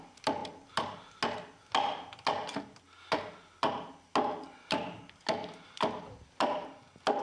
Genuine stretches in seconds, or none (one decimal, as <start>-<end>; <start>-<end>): 0.0-7.2